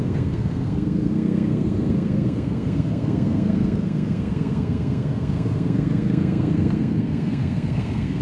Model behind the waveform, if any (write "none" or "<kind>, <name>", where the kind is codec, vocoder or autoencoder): codec, SNAC